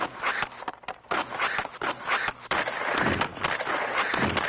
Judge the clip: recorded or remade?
recorded